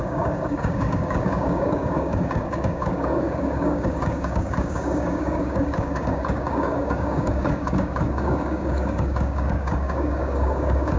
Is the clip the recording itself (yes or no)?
no